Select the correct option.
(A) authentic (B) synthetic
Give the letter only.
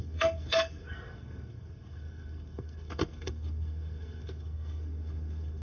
B